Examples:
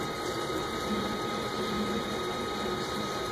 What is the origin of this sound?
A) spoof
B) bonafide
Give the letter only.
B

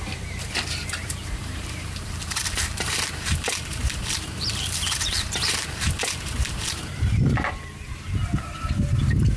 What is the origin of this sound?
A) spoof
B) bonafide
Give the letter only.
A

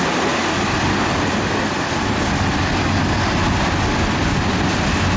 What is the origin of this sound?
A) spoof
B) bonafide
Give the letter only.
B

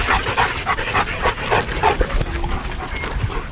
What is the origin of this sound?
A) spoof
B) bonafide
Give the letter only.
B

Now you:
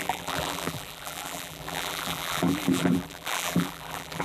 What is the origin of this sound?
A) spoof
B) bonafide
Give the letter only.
A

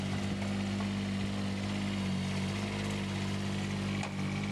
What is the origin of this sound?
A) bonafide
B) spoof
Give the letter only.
A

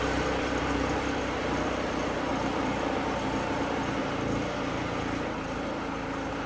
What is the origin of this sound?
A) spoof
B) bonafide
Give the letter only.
A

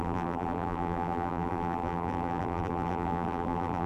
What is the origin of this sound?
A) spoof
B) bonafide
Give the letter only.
A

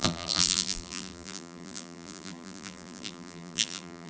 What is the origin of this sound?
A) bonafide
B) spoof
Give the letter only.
B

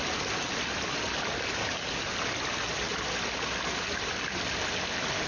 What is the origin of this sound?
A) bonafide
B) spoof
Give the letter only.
A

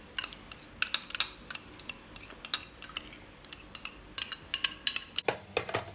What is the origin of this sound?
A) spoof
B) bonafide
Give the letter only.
B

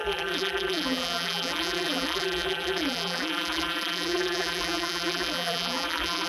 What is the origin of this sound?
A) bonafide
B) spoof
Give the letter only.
B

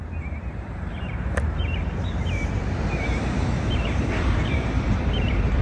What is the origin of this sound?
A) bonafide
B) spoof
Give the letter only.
B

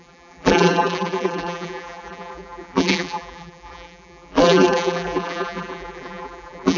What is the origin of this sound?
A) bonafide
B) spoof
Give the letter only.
B